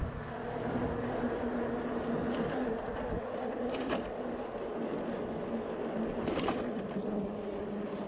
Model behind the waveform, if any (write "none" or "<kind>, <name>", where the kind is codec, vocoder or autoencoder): none